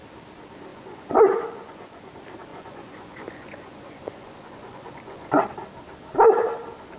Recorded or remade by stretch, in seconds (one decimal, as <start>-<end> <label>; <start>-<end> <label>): 0.0-0.7 recorded; 0.7-2.1 remade; 2.1-2.5 recorded; 2.5-5.5 remade; 5.5-7.0 recorded